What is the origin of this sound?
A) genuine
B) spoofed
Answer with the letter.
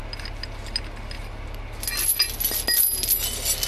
A